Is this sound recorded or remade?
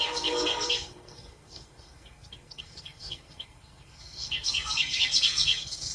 remade